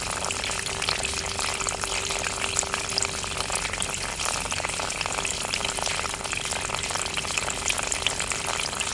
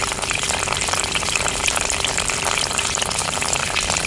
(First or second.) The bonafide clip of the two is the first